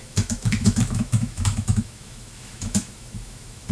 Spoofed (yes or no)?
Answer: yes